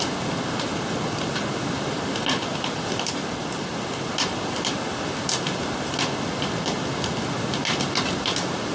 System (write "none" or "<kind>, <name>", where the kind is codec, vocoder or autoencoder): none